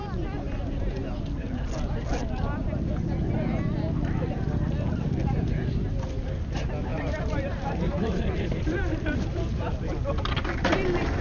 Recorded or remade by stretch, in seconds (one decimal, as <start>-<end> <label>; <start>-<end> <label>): 0.0-6.9 recorded; 6.9-9.7 remade; 9.7-11.2 recorded